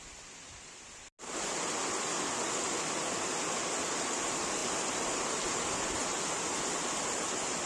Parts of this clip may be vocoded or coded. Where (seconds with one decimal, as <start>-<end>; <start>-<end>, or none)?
none